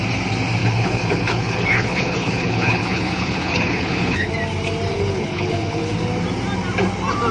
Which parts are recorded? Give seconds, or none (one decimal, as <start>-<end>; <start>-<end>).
0.0-0.6; 4.3-4.9; 6.0-7.3